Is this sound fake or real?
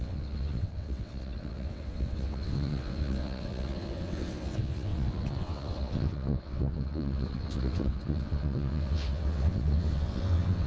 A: fake